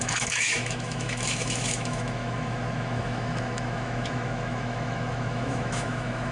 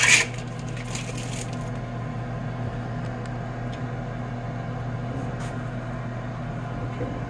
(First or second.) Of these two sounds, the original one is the second